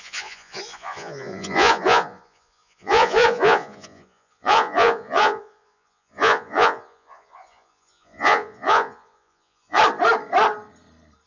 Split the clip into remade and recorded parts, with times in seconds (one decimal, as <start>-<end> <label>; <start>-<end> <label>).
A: 0.0-9.8 remade; 9.8-11.3 recorded